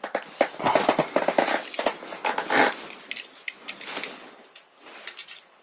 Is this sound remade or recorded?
recorded